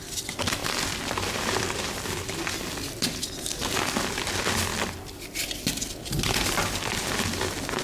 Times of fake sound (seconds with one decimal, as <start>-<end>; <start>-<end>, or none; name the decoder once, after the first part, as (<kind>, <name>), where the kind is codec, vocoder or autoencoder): 0.0-4.7 (vocoder, BigVGAN v2); 5.7-7.8